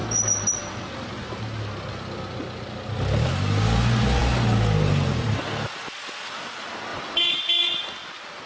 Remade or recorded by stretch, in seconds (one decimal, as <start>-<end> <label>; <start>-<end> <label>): 0.0-8.5 recorded